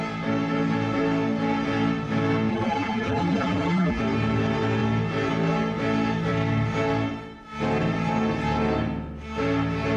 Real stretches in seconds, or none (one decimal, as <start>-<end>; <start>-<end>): 0.0-2.5; 4.0-10.0